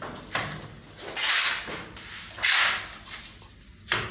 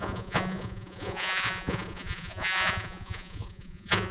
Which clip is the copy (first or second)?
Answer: second